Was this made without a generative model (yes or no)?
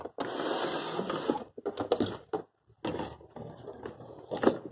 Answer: yes